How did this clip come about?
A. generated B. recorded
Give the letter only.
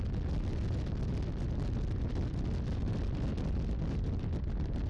B